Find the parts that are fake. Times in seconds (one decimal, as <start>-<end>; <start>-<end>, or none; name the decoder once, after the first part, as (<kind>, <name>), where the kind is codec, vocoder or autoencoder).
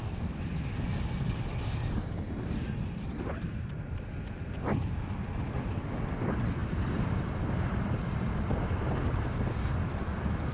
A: none